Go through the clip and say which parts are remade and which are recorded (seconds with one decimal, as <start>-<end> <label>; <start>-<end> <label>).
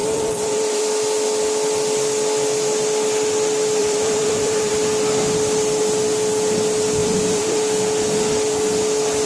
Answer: 0.0-0.8 remade; 0.8-3.8 recorded; 3.8-4.7 remade; 4.7-7.0 recorded; 7.0-7.6 remade; 7.6-9.3 recorded